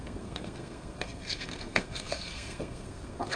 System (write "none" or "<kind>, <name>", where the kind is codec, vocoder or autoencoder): codec, SNAC